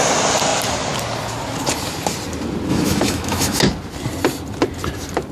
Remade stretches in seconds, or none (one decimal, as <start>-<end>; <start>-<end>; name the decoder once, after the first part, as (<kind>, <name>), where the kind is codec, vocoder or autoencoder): 2.7-3.6 (autoencoder, DAC-VAE)